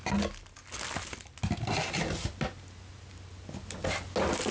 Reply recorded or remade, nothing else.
recorded